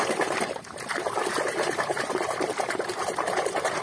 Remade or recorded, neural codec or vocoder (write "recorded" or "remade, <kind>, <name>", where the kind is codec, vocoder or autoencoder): remade, vocoder, BigVGAN v2